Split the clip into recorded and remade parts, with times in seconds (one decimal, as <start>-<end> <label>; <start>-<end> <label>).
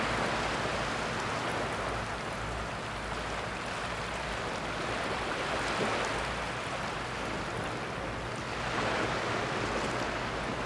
0.0-10.7 recorded